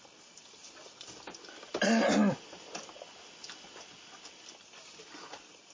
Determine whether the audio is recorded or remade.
recorded